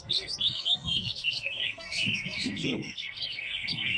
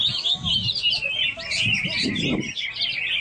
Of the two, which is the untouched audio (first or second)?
second